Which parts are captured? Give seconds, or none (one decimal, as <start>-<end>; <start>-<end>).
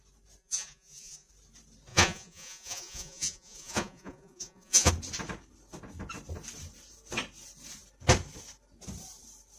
0.0-0.4; 1.3-1.9; 4.9-9.6